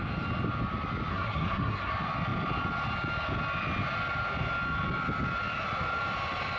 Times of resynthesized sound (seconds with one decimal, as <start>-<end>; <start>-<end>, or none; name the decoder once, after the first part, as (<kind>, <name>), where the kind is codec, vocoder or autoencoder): 1.1-1.9 (codec, SNAC)